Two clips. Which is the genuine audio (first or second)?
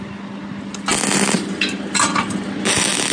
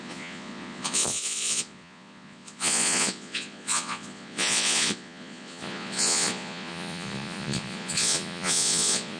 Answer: first